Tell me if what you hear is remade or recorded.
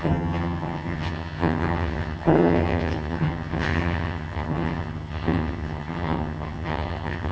remade